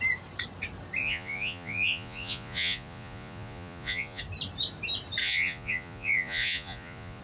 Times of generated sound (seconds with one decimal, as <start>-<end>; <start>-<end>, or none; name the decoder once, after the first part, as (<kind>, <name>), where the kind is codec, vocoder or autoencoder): 1.0-4.2 (vocoder, Vocos); 5.2-7.2